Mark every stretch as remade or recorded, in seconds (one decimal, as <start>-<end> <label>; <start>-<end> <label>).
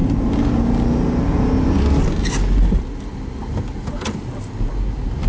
0.0-5.3 recorded